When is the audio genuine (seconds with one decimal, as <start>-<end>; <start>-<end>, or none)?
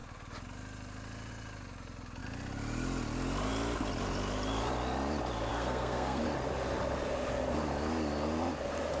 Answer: 0.0-5.5; 6.2-9.0